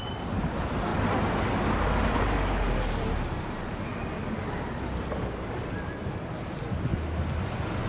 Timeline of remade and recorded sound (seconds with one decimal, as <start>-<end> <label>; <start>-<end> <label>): 0.0-7.9 recorded